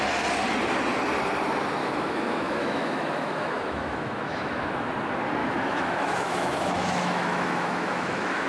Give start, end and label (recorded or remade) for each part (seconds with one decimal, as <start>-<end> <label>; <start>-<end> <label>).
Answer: 0.0-1.8 recorded; 1.8-4.9 remade; 4.9-5.4 recorded; 5.4-8.5 remade